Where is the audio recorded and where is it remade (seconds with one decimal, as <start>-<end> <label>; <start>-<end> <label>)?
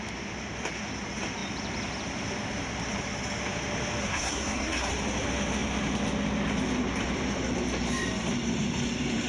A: 0.0-4.0 recorded; 4.0-4.9 remade; 4.9-9.3 recorded